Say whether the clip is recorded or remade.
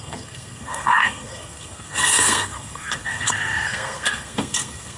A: remade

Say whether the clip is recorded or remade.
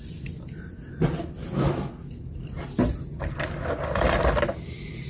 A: recorded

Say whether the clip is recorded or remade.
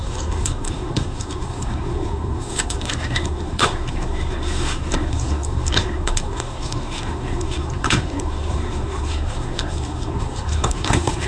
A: remade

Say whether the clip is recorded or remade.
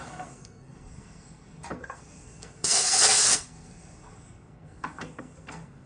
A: remade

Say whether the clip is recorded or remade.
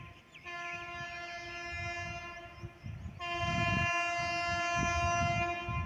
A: recorded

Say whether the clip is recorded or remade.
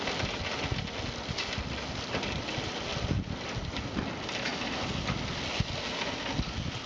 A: recorded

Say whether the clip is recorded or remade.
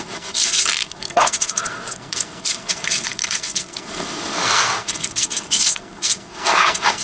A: remade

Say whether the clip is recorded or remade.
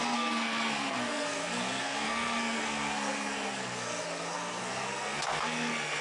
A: remade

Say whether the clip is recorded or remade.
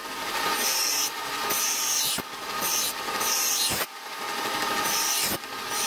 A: recorded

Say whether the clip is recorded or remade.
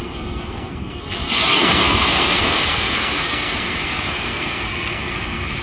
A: remade